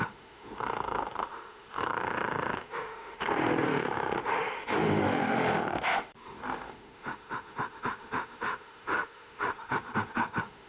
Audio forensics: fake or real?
fake